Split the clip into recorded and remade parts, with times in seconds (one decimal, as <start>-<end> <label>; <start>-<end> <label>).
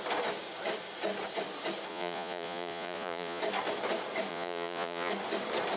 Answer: 0.0-1.9 recorded; 1.9-3.4 remade; 3.4-4.3 recorded; 4.3-5.1 remade; 5.1-5.8 recorded